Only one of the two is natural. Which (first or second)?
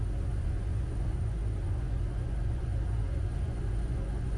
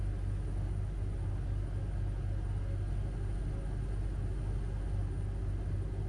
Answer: second